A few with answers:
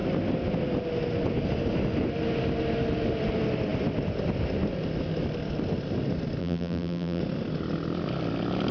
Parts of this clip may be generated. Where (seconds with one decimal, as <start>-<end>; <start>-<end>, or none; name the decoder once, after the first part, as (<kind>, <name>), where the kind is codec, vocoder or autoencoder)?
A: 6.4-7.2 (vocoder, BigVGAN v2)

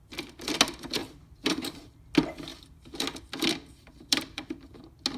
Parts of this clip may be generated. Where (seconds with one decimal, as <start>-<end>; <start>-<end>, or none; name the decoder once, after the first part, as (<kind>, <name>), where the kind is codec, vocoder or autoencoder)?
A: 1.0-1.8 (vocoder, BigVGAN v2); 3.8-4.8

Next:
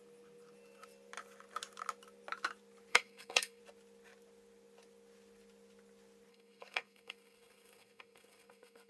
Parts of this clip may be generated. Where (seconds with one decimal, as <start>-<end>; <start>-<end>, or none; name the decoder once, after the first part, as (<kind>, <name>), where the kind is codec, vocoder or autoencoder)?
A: 2.9-3.6 (codec, SNAC); 6.3-8.9

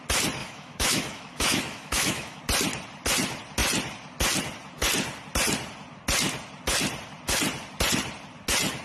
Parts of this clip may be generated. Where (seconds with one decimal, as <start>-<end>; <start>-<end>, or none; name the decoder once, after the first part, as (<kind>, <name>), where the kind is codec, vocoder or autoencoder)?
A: 0.4-2.4 (autoencoder, DAC-VAE)

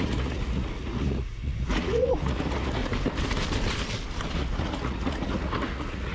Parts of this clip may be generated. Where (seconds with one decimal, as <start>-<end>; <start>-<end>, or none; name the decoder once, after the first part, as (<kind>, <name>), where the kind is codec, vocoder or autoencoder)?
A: 0.0-2.8 (vocoder, Vocos); 4.3-6.1